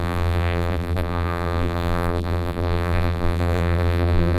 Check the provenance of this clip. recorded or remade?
remade